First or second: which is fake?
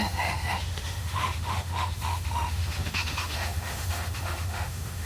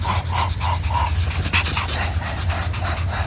first